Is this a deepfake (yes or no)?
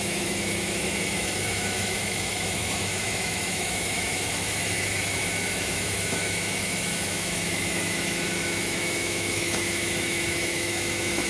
yes